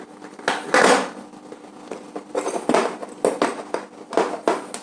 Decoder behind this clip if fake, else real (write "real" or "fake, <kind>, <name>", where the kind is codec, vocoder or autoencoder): real